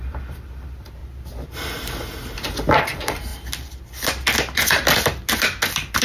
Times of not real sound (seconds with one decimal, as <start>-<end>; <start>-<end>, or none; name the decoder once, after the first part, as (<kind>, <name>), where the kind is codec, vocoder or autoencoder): 0.0-1.0 (vocoder, BigVGAN v2); 2.8-3.3